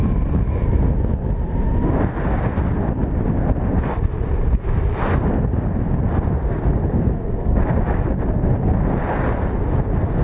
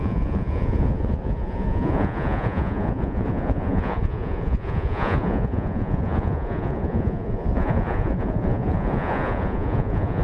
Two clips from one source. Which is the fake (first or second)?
second